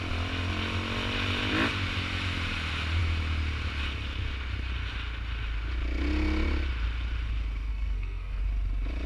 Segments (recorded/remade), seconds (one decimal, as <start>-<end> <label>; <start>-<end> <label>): 0.0-7.7 recorded; 7.7-8.4 remade; 8.4-9.1 recorded

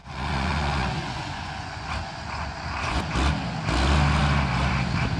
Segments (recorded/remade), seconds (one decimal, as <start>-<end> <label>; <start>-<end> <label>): 0.0-3.1 remade; 3.1-5.2 recorded

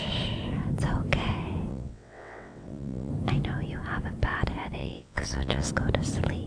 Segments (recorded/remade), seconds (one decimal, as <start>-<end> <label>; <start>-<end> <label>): 0.0-1.7 recorded; 1.7-3.1 remade; 3.1-4.8 recorded; 4.8-5.7 remade; 5.7-6.5 recorded

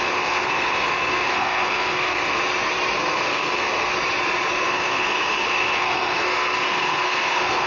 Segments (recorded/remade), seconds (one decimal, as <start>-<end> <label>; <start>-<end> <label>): 0.0-2.4 remade; 2.4-3.0 recorded; 3.0-3.9 remade; 3.9-4.5 recorded; 4.5-7.7 remade

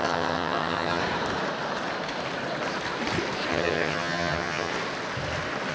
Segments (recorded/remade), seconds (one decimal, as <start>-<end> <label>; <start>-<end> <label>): 0.0-1.0 remade; 1.0-3.5 recorded; 3.5-4.7 remade; 4.7-5.7 recorded

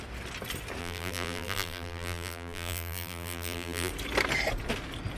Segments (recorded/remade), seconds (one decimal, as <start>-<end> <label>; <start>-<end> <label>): 0.0-0.8 recorded; 0.8-3.9 remade; 3.9-5.2 recorded

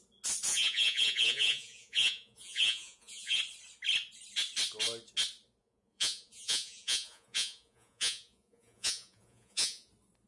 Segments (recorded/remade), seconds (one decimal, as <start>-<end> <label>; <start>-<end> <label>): 0.0-0.5 recorded; 0.5-3.4 remade; 3.4-5.6 recorded; 5.6-9.9 remade; 9.9-10.3 recorded

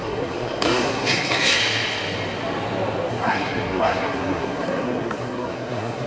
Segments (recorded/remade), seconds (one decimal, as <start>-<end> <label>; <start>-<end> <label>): 0.0-1.6 remade; 1.6-3.1 recorded; 3.1-6.1 remade